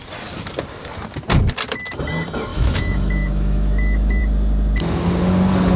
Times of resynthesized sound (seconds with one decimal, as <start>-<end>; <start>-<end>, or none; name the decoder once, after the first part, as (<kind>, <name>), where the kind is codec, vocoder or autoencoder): 2.5-4.2 (autoencoder, DAC-VAE)